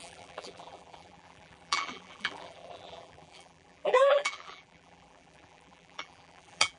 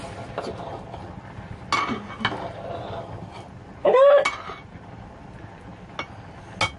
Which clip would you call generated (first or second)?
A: first